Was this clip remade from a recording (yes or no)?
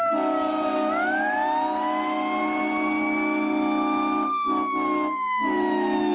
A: no